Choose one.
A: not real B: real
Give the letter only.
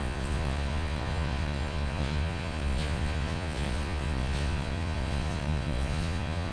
A